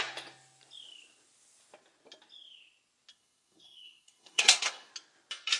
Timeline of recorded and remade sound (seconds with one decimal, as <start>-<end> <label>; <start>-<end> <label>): 0.0-3.1 recorded; 3.1-4.9 remade; 4.9-5.6 recorded